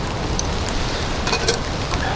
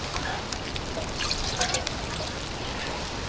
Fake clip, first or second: first